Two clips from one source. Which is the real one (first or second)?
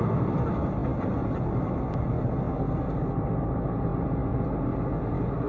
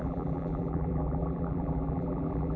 first